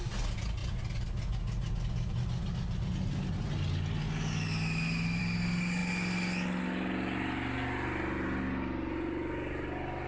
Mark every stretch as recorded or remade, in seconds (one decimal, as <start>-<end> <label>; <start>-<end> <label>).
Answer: 0.0-10.1 recorded